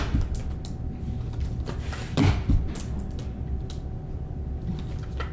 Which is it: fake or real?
real